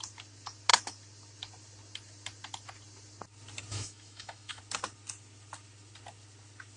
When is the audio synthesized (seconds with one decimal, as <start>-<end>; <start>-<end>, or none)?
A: 3.7-4.6